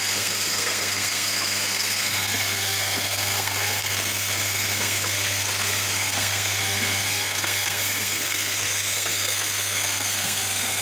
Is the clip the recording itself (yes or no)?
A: no